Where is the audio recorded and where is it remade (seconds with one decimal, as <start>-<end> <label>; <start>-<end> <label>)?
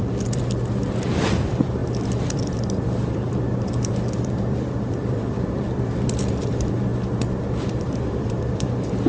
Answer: 0.0-6.9 remade; 6.9-7.5 recorded; 7.5-9.1 remade